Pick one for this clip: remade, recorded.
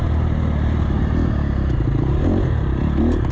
recorded